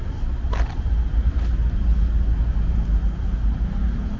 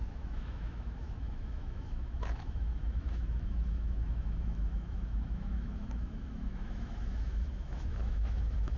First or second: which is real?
first